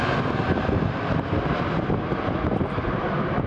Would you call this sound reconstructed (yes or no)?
no